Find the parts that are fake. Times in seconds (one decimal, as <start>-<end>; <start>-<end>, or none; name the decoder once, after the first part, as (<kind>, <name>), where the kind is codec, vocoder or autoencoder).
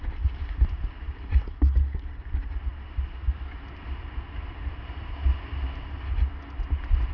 none